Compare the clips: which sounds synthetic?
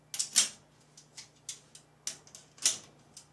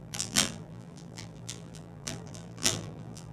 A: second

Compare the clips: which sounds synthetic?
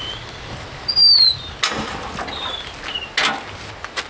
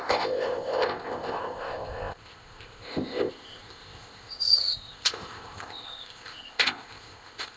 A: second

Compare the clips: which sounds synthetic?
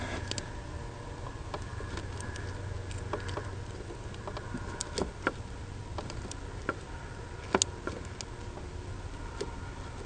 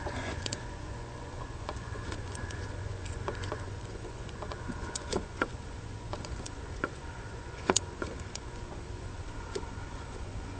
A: second